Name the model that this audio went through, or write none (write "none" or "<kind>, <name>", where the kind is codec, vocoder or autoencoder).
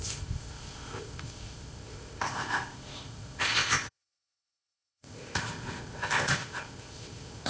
codec, ZipCodec